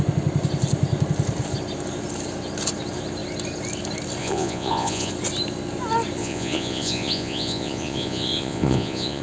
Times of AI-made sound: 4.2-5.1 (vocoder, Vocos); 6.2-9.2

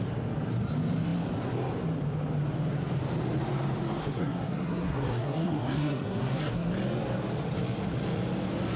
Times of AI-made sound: 4.0-6.7 (codec, SNAC)